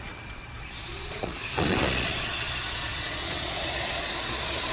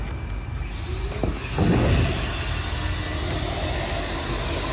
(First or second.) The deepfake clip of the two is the first